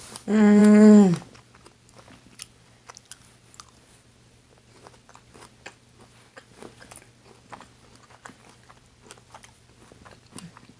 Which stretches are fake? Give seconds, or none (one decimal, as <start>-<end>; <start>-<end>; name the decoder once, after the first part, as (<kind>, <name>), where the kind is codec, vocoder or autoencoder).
none